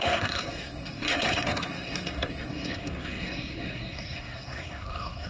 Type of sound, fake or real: fake